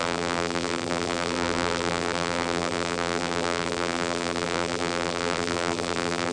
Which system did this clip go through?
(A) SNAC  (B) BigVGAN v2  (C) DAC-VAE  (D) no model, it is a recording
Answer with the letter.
B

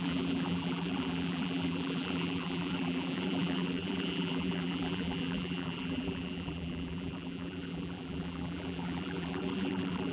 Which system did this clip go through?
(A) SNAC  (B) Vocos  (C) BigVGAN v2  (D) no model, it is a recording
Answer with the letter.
C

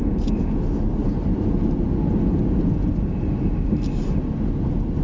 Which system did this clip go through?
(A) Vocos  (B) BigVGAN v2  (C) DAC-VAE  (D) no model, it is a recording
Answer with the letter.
D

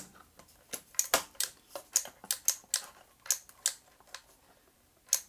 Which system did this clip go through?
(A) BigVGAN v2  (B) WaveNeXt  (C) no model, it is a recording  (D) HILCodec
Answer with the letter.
C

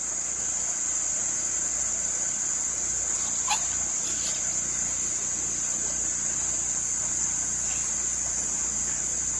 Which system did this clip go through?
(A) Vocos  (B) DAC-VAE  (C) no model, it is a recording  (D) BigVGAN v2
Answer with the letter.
C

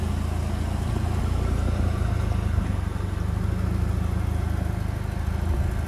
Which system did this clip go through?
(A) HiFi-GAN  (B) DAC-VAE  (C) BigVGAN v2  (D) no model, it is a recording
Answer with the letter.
D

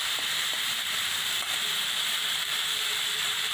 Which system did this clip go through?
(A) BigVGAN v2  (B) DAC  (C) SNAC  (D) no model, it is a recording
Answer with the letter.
A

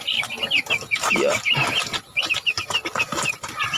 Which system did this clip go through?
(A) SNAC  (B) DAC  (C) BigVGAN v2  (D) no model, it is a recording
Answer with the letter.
D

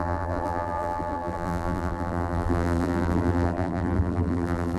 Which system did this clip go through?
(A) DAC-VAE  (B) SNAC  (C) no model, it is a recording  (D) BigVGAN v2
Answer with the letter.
D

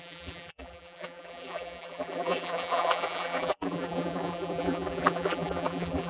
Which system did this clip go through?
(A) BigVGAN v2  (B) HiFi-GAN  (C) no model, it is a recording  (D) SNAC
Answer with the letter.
A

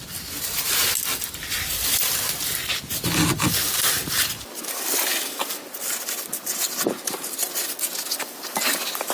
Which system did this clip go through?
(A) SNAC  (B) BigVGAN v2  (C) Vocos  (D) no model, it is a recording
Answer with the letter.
D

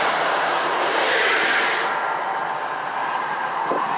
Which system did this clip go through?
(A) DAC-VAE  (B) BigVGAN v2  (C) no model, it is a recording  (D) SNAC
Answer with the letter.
C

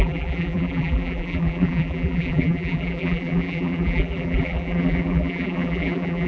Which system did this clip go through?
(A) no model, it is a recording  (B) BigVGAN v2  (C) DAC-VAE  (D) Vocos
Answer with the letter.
B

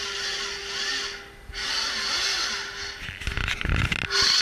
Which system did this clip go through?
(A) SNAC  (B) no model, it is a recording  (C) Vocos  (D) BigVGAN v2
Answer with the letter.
B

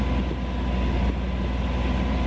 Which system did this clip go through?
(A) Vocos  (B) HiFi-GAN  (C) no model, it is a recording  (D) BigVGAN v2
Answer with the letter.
C